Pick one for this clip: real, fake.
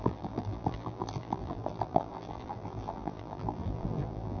fake